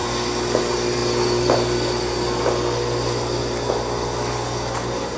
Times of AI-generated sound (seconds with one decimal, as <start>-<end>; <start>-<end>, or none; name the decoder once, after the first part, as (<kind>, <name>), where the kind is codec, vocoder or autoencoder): none